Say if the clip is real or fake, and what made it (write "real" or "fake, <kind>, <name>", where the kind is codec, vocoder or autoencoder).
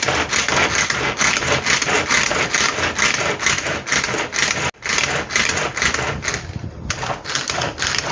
real